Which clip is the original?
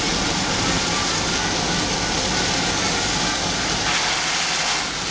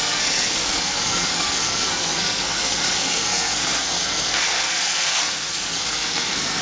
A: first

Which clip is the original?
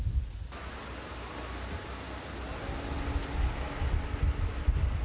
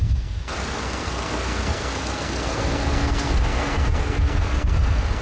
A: first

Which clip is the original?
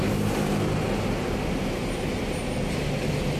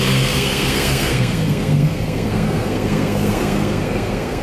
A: first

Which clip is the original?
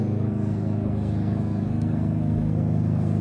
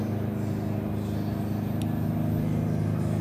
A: second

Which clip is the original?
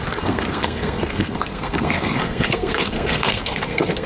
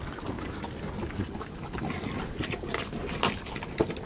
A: second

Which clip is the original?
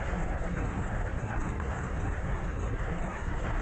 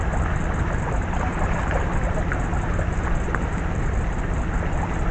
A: second